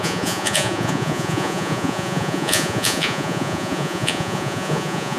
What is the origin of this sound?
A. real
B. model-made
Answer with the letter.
B